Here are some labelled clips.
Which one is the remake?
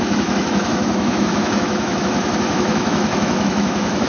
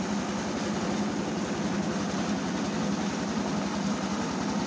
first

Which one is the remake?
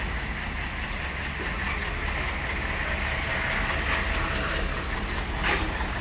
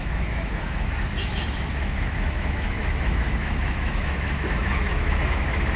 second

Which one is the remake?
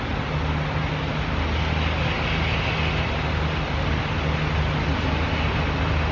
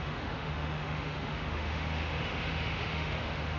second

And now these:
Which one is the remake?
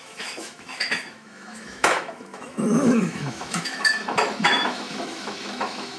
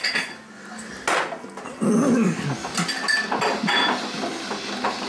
first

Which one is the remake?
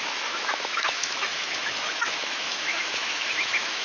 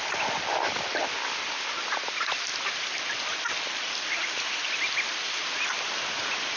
first